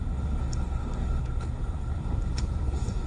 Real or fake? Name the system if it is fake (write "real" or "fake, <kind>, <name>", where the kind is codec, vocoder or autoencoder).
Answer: fake, codec, SNAC